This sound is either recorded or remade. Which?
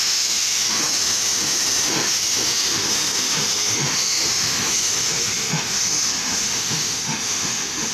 remade